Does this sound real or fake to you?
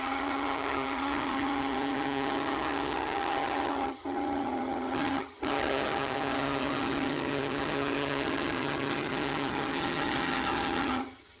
fake